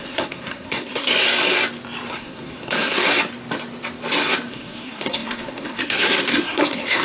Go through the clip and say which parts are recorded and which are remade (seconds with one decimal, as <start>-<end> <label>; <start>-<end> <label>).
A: 0.0-1.1 remade; 1.1-2.1 recorded; 2.1-3.0 remade; 3.0-4.5 recorded; 4.5-7.0 remade